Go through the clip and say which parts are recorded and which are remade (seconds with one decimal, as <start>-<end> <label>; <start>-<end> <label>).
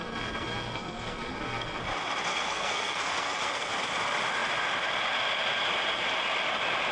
0.0-1.8 remade; 1.8-2.3 recorded; 2.3-3.7 remade; 3.7-6.9 recorded